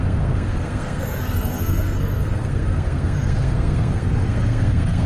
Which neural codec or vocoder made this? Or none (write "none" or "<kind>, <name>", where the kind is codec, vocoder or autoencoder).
codec, SNAC